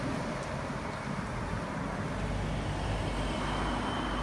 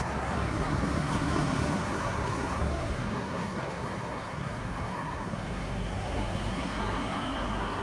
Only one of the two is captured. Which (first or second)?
first